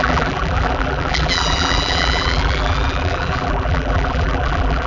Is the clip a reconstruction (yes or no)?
yes